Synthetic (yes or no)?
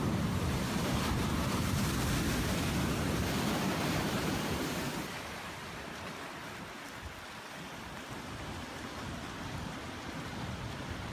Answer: no